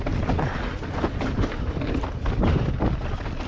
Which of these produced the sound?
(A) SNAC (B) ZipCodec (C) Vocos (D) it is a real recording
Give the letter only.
D